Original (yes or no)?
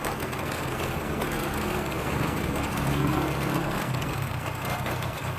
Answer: no